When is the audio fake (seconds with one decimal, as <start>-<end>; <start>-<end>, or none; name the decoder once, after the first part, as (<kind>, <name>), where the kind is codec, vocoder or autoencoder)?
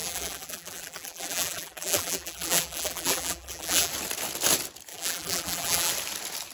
0.0-3.9 (vocoder, BigVGAN v2); 4.9-5.9